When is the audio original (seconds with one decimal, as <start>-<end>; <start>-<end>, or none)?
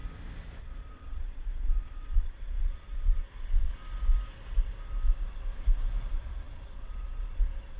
0.0-0.6; 3.7-6.1